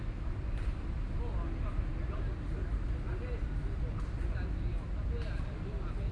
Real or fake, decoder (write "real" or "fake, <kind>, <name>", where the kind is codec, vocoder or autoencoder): real